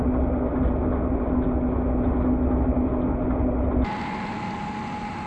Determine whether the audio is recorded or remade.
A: recorded